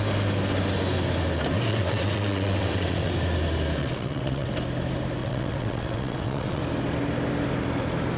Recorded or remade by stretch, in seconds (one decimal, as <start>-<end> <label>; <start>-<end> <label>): 0.0-1.7 recorded; 1.7-3.1 remade; 3.1-3.8 recorded; 3.8-4.5 remade; 4.5-5.2 recorded; 5.2-6.6 remade; 6.6-8.2 recorded